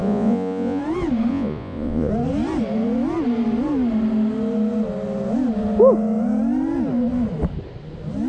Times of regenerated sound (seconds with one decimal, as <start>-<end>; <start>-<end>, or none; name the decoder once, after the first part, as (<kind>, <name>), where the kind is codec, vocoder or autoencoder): 0.0-0.8 (vocoder, Vocos); 1.3-2.1